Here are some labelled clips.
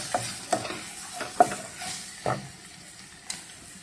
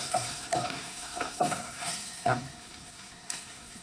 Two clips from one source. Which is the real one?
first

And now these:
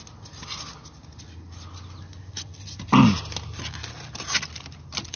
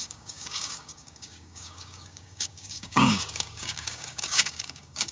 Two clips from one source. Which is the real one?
first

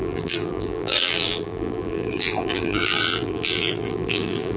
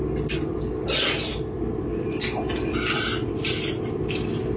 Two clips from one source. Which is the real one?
second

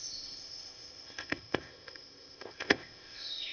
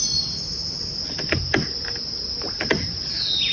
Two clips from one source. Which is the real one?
second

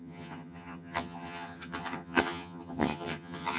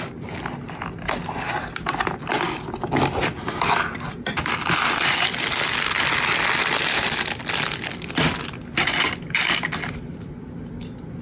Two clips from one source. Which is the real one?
second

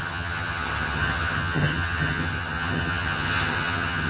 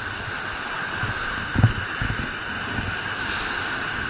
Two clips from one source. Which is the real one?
second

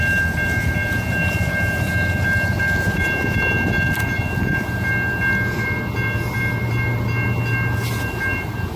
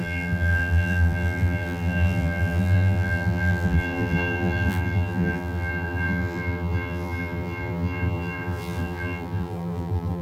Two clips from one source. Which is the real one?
first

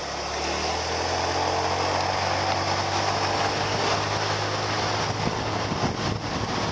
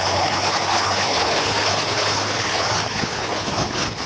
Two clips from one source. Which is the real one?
first